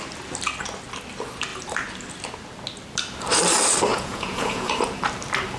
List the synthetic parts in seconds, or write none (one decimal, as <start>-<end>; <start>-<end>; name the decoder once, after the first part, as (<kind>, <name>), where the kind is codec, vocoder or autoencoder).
3.9-4.7 (vocoder, Vocos)